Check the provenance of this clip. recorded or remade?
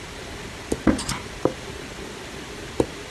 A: recorded